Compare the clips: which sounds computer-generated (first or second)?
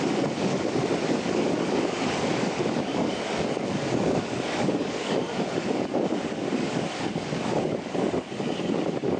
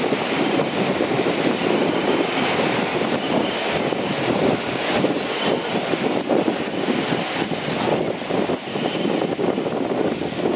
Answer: first